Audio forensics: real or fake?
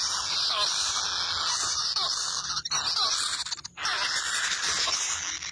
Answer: real